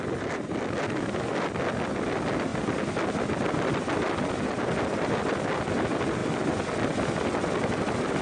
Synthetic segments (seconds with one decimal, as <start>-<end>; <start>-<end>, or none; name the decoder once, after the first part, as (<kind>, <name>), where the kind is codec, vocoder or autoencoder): none